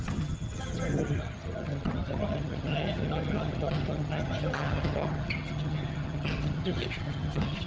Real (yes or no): no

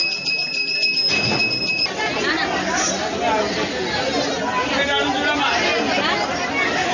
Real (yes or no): yes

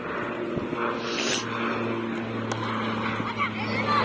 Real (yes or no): yes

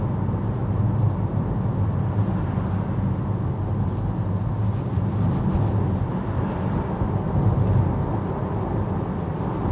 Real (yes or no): yes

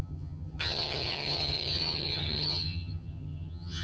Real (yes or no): no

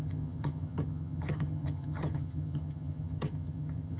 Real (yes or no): no